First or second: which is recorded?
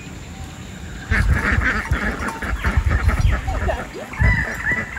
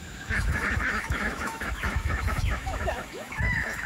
first